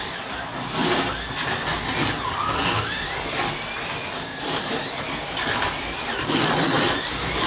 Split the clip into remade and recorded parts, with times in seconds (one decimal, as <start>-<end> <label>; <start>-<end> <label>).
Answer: 0.0-4.3 recorded; 4.3-5.0 remade; 5.0-7.5 recorded